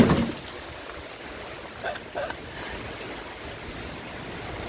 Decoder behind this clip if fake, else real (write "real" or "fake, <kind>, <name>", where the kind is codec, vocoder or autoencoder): real